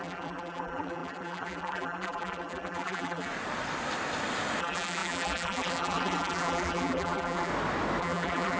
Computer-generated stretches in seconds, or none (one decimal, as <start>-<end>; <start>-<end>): 0.0-3.3; 4.6-7.5; 8.0-8.6